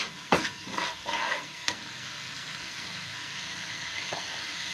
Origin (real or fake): fake